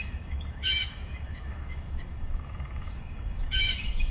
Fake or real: fake